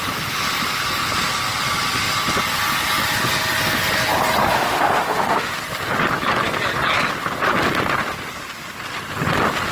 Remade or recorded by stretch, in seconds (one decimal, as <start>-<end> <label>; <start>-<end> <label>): 0.0-4.5 recorded; 4.5-5.5 remade; 5.5-9.7 recorded